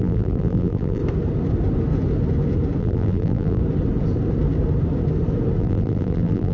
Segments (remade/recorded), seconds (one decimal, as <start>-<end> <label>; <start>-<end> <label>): 0.0-1.0 remade; 1.0-2.8 recorded; 2.8-3.6 remade; 3.6-5.6 recorded; 5.6-6.5 remade